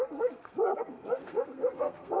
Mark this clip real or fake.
fake